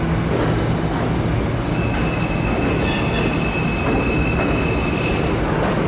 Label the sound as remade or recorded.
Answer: recorded